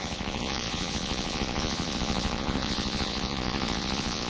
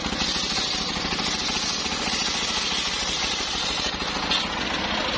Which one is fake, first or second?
first